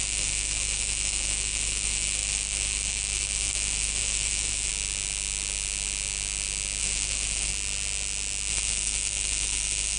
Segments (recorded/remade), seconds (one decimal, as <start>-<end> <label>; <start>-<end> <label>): 0.0-4.7 remade; 4.7-6.8 recorded; 6.8-7.5 remade; 7.5-8.5 recorded; 8.5-10.0 remade